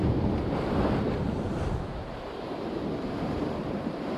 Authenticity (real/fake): fake